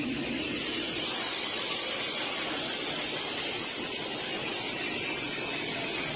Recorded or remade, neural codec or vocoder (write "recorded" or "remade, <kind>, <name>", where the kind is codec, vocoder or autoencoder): recorded